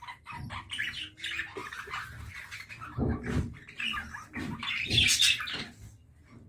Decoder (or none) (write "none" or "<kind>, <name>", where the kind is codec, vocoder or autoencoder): none